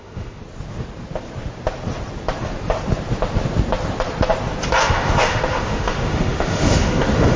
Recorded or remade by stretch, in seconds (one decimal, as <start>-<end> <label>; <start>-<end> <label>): 0.0-0.4 remade; 0.4-4.8 recorded; 4.8-7.4 remade